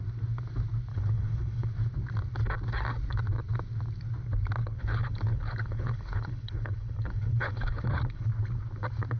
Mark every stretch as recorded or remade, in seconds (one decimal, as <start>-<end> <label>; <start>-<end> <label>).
0.0-0.9 recorded; 0.9-1.7 remade; 1.7-4.6 recorded; 4.6-8.3 remade; 8.3-9.2 recorded